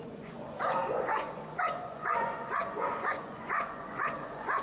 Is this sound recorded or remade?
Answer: remade